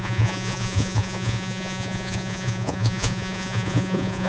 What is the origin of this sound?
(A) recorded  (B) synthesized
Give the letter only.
B